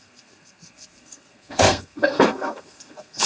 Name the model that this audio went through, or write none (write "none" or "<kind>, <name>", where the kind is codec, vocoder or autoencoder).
codec, SNAC